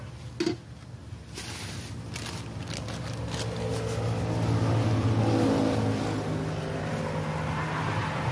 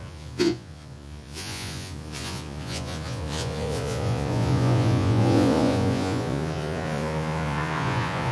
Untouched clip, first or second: first